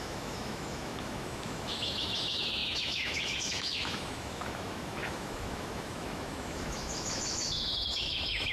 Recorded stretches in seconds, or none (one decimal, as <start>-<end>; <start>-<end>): none